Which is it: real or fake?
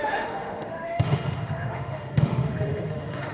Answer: fake